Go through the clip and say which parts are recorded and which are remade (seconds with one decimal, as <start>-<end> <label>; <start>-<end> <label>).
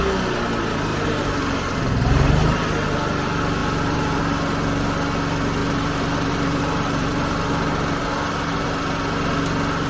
0.0-0.9 recorded; 0.9-2.3 remade; 2.3-3.6 recorded; 3.6-4.2 remade; 4.2-5.6 recorded; 5.6-9.0 remade; 9.0-9.9 recorded